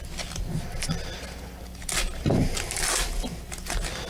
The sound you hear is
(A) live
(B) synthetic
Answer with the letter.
A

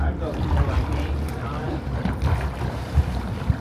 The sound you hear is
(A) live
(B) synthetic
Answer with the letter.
B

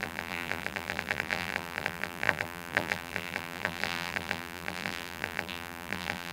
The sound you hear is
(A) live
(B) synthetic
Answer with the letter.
B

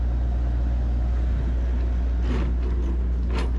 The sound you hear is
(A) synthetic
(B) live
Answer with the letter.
B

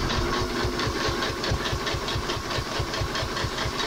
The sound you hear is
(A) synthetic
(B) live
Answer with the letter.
B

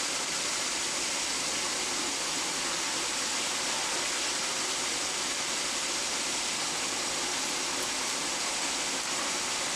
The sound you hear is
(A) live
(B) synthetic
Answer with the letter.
B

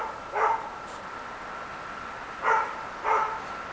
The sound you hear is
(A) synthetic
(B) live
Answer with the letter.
B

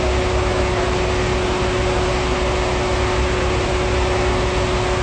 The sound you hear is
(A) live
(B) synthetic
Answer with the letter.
A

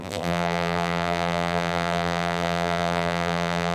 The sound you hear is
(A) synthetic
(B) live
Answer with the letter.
A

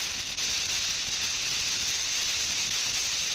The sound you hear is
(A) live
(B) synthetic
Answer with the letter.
A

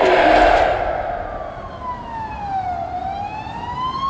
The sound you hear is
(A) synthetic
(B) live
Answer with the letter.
B